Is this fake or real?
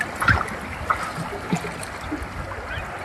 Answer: real